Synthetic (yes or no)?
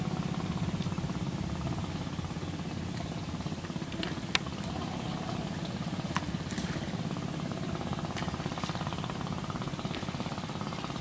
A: no